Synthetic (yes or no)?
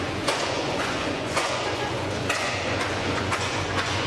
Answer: yes